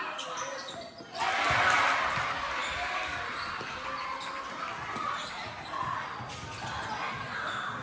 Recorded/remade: recorded